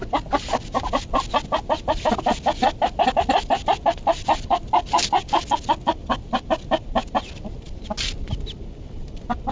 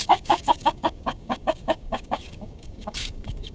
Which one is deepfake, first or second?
second